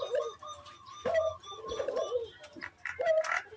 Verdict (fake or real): real